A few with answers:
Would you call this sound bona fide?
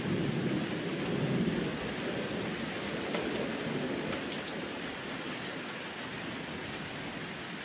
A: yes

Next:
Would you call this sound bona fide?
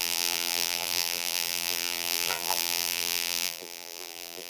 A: no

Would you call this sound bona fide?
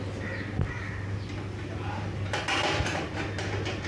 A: yes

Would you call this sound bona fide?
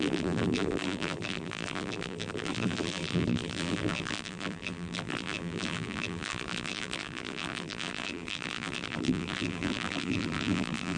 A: no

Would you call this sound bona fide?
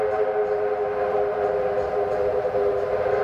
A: yes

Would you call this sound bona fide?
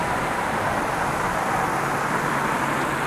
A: yes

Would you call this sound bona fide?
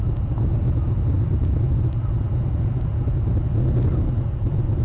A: yes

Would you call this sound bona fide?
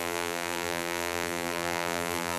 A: no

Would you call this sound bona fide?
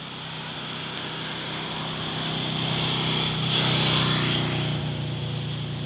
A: yes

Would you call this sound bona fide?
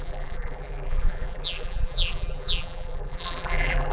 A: no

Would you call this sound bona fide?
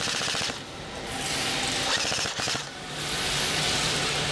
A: yes